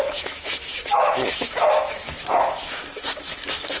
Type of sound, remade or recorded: remade